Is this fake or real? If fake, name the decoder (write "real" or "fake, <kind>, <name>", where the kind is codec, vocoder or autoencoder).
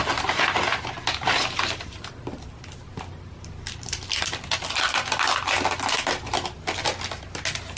real